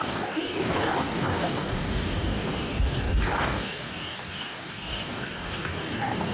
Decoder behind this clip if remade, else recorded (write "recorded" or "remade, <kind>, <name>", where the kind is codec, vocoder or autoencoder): remade, codec, DAC